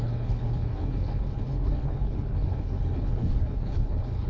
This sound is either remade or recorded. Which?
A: remade